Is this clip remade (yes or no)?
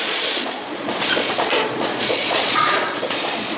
yes